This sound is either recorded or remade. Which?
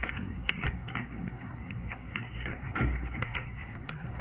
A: remade